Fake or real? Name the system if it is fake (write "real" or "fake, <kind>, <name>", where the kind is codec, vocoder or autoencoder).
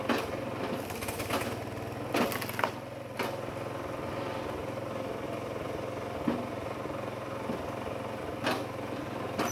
real